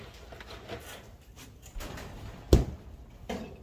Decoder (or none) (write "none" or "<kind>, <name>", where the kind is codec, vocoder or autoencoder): none